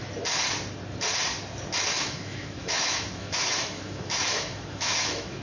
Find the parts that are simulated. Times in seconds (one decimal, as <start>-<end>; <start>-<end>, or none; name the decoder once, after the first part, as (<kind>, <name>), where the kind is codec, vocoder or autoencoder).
1.9-5.4 (autoencoder, DAC-VAE)